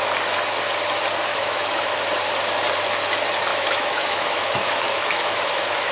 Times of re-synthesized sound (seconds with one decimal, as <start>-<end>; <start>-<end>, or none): 1.3-2.0; 3.5-5.9